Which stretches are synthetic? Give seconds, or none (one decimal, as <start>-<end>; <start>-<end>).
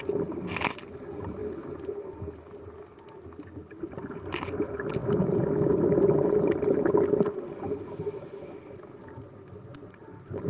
none